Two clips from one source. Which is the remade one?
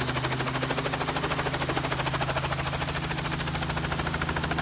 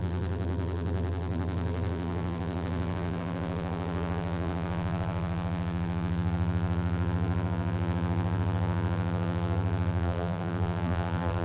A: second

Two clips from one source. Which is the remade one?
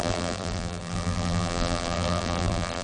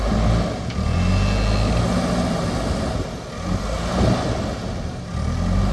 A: first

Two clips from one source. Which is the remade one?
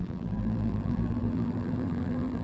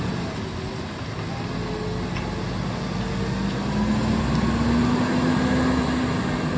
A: first